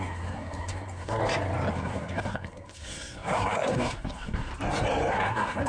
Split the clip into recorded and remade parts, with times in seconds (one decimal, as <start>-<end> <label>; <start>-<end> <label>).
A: 0.0-1.2 remade; 1.2-1.7 recorded; 1.7-4.5 remade; 4.5-5.1 recorded; 5.1-5.7 remade